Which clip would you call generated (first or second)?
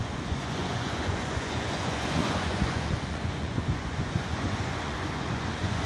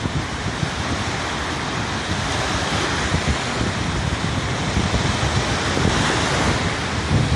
first